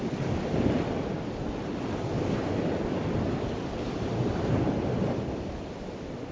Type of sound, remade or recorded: recorded